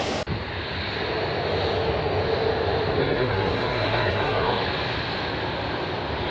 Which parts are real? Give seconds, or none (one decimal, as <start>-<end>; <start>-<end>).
0.0-3.0; 4.6-6.3